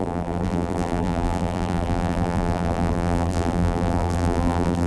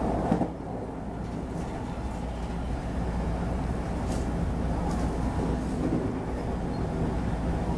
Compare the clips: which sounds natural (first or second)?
second